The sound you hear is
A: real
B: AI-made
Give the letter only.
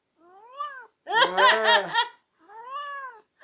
A